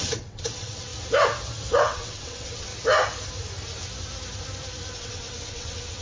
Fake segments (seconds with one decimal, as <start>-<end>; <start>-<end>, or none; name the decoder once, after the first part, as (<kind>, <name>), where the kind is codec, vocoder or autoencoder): 0.0-0.9 (vocoder, WaveNeXt); 1.8-2.7; 5.0-6.0